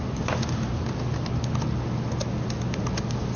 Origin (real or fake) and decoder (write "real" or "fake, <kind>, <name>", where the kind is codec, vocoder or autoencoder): real